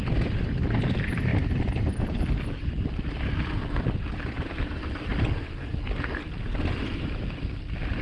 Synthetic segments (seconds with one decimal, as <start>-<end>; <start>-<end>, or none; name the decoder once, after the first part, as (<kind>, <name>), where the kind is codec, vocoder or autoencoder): 1.3-2.1 (vocoder, BigVGAN v2)